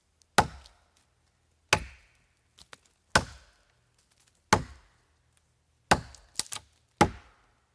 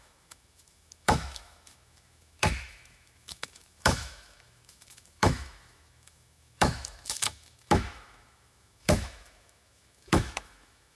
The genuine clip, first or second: first